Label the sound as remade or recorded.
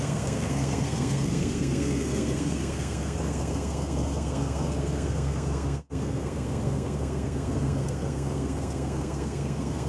remade